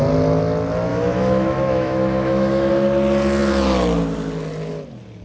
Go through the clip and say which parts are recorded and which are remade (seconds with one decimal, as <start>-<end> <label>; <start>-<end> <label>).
0.0-0.9 recorded; 0.9-2.7 remade; 2.7-5.2 recorded